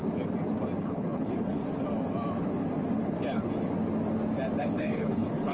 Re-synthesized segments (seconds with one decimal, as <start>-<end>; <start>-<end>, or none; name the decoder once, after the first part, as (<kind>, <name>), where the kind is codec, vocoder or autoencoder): 0.8-1.6 (codec, HILCodec); 4.6-5.5